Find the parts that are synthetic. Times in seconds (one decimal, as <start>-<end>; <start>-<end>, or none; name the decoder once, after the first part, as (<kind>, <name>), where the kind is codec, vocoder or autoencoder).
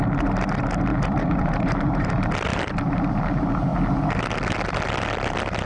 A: 0.9-2.1 (vocoder, BigVGAN v2); 2.5-3.0